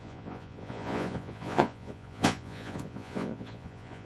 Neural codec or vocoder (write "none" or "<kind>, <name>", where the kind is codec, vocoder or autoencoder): vocoder, Vocos